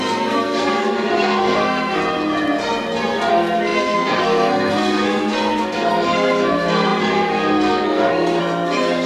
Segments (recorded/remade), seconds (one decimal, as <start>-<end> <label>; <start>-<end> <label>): 0.0-2.0 remade; 2.0-3.3 recorded; 3.3-9.1 remade